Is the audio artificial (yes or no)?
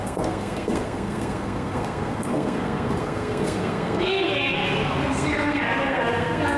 yes